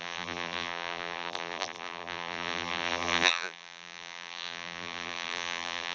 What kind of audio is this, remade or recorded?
remade